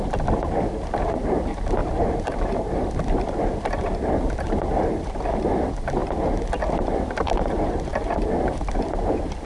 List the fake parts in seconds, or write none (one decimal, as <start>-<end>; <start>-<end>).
1.8-2.9